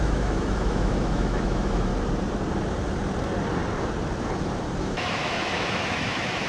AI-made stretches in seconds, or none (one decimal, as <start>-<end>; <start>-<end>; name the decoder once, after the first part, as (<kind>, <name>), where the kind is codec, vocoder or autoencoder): 0.0-1.9 (autoencoder, DAC-VAE); 4.8-6.5